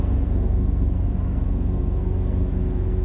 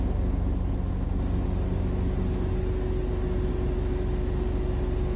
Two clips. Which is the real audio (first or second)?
second